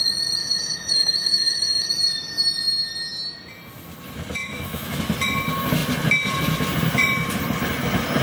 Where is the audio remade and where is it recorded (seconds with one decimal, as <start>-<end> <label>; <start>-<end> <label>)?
0.0-0.4 recorded; 0.4-1.9 remade; 1.9-4.4 recorded; 4.4-5.0 remade; 5.0-8.2 recorded